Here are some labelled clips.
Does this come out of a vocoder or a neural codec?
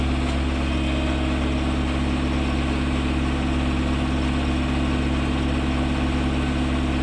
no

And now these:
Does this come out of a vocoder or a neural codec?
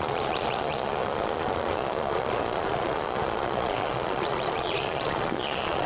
yes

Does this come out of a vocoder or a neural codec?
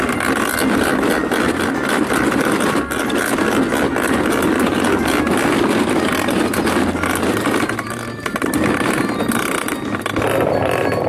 no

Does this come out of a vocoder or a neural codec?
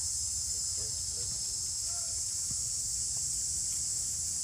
yes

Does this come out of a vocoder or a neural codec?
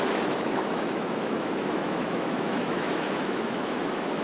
yes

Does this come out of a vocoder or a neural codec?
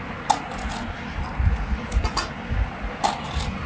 no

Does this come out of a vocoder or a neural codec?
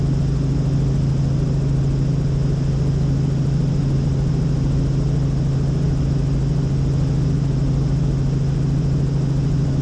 no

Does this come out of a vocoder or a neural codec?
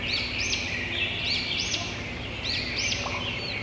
yes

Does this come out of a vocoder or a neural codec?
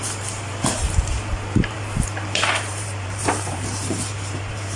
yes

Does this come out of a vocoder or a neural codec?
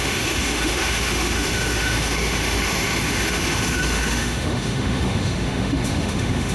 yes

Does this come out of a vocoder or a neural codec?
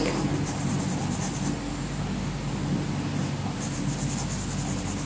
no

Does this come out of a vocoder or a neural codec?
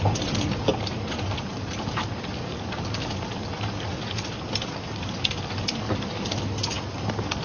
no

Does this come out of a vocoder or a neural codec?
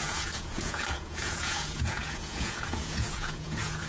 yes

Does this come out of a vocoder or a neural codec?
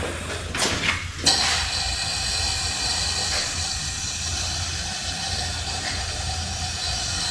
no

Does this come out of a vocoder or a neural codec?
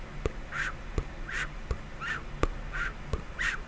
no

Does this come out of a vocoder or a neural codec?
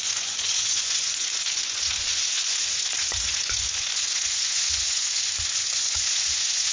yes